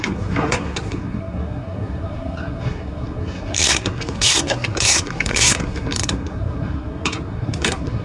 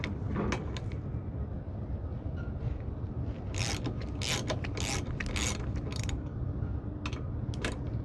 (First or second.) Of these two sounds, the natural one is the second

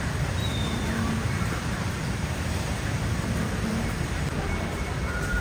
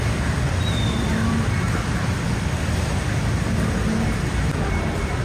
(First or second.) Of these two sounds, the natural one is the second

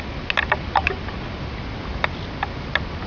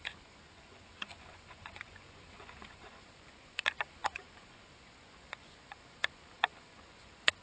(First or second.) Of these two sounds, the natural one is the first